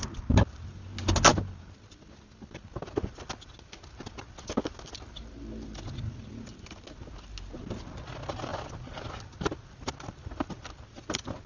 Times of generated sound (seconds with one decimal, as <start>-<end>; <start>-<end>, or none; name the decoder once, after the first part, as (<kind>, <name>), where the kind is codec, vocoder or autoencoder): none